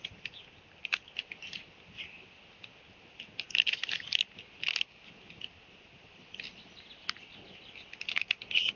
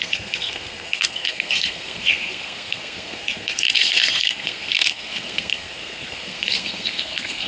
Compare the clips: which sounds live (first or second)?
first